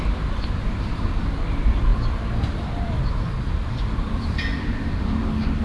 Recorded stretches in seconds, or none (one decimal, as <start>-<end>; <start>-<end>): 0.0-4.6